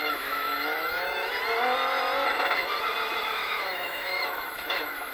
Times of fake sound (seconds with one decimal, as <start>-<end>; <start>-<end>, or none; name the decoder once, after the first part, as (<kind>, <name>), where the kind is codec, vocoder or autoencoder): 0.0-1.4 (autoencoder, DAC-VAE); 3.2-5.1